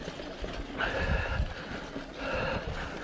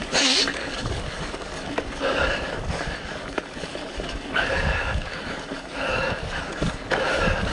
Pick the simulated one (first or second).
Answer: second